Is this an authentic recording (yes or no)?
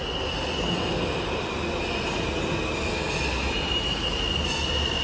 yes